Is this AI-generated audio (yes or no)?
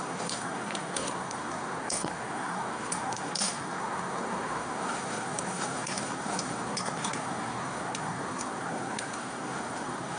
yes